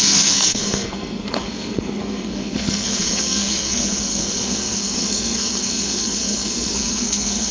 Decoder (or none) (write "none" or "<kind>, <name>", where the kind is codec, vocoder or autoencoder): codec, SNAC